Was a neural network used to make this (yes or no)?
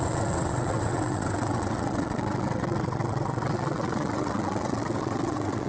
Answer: yes